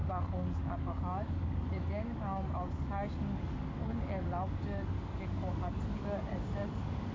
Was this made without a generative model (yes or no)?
no